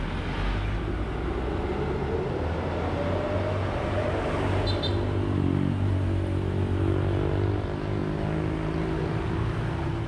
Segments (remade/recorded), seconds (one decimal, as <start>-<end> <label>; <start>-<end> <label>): 0.0-10.1 recorded